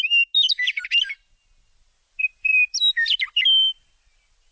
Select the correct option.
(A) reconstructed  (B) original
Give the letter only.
B